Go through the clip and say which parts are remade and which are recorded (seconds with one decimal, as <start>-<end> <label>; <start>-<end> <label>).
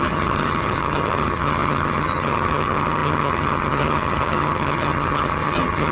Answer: 0.0-5.9 remade